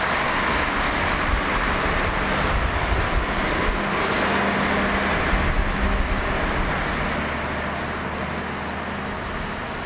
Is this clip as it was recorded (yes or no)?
yes